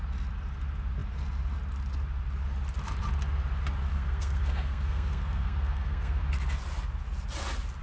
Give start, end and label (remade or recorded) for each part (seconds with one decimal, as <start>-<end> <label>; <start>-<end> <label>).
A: 0.0-3.9 recorded; 3.9-6.2 remade; 6.2-7.8 recorded